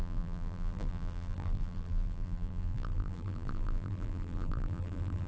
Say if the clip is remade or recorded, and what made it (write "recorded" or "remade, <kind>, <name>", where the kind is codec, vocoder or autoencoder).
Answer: remade, vocoder, BigVGAN v2